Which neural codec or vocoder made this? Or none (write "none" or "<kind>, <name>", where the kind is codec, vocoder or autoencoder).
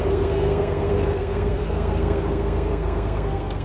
codec, SNAC